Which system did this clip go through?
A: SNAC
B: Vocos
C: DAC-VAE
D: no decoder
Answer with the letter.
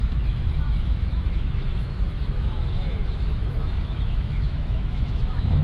C